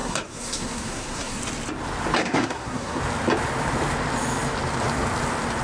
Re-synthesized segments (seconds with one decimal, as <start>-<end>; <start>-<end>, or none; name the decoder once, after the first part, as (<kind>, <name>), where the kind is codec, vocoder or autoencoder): 0.0-1.4 (codec, SNAC); 2.2-3.0